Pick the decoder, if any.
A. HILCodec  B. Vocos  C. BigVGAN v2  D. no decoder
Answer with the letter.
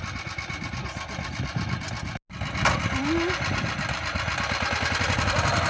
D